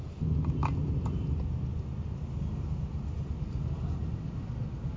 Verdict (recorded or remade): recorded